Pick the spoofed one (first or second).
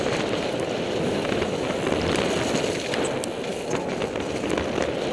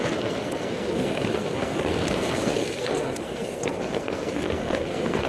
second